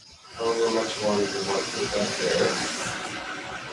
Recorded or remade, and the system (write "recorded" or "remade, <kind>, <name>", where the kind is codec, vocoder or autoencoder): recorded